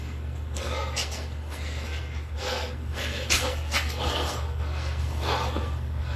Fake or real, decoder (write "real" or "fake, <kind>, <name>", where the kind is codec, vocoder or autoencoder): fake, codec, SNAC